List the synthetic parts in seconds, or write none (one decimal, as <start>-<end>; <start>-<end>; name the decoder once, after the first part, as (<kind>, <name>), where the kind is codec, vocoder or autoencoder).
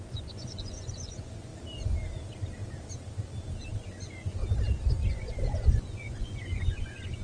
0.0-1.5 (vocoder, Vocos); 3.8-4.4; 5.1-7.2